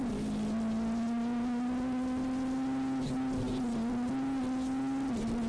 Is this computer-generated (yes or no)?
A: no